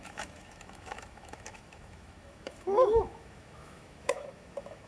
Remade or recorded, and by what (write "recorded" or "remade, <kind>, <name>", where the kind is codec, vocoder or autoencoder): remade, autoencoder, DAC-VAE